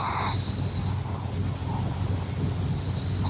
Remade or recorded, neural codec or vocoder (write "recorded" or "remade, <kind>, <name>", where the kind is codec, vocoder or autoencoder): recorded